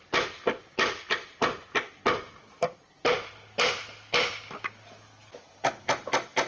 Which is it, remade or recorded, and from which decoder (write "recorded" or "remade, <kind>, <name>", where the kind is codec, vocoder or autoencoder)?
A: recorded